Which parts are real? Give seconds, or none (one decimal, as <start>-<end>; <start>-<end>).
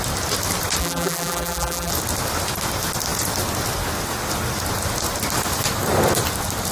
0.0-0.8; 1.9-6.7